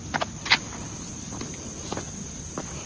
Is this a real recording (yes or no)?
yes